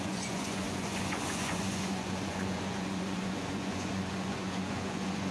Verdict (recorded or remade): remade